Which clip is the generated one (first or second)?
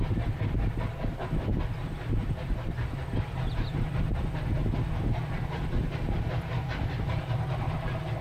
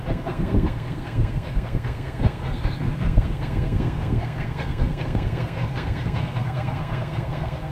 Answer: second